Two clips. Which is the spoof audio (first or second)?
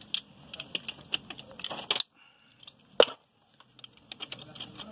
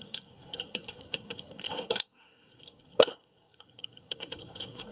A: second